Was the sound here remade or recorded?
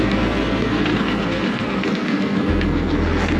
remade